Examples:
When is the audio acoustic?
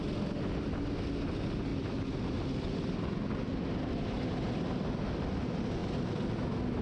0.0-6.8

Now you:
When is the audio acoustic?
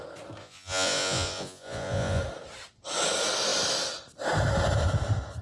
0.0-0.4; 2.2-5.4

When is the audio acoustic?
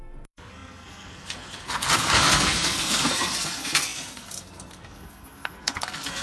none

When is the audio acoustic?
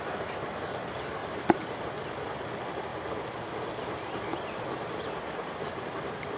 0.0-1.2; 2.4-6.4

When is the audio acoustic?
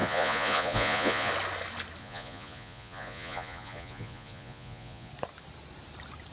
1.3-2.0; 5.1-6.3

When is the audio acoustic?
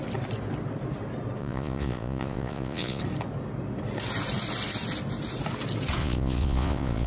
0.0-1.4; 3.0-6.0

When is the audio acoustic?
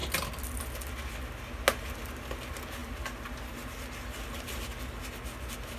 0.0-2.8; 3.5-5.8